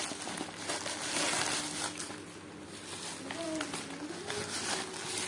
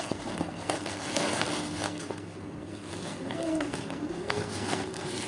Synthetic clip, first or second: second